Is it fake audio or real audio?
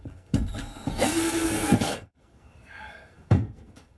fake